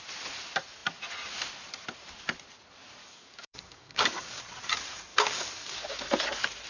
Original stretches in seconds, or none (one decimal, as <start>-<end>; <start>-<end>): 0.0-3.0; 4.4-5.1; 6.0-6.7